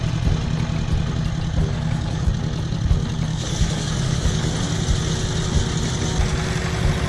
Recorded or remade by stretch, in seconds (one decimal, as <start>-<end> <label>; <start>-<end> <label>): 0.0-1.6 recorded; 1.6-2.3 remade; 2.3-3.3 recorded; 3.3-4.5 remade; 4.5-7.1 recorded